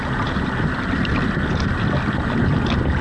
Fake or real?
real